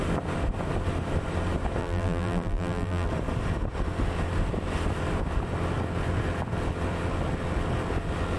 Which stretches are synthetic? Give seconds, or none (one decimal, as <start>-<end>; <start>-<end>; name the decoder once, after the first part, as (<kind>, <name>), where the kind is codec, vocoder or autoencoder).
1.8-3.1 (vocoder, BigVGAN v2)